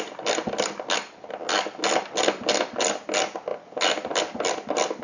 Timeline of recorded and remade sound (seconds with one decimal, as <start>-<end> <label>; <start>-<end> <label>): 0.0-5.0 recorded